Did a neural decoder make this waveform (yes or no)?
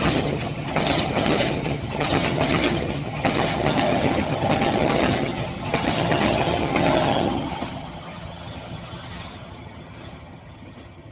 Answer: yes